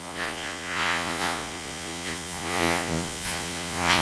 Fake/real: fake